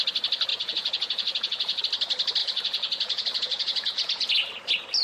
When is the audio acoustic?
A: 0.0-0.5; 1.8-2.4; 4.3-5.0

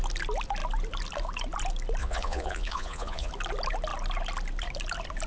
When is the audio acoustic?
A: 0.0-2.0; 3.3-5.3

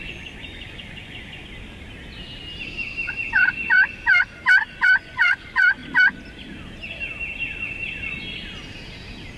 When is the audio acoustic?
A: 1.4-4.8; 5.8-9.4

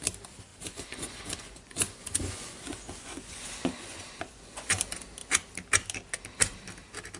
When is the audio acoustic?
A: 0.0-0.5; 4.8-7.2